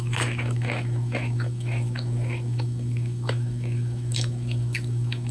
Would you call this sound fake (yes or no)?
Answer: yes